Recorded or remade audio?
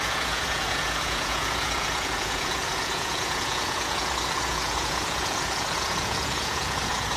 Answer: remade